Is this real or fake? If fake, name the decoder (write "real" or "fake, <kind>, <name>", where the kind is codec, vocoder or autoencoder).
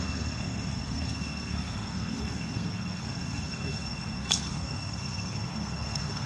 fake, codec, SNAC